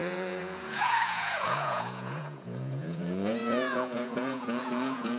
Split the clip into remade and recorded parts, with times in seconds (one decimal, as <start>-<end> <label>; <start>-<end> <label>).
0.0-5.2 remade